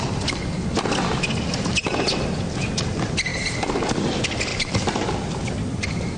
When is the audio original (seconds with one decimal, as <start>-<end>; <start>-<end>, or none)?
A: 0.0-3.3; 4.1-4.5